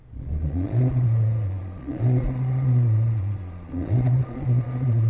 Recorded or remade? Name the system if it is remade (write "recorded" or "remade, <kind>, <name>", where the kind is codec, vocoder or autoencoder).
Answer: remade, vocoder, Vocos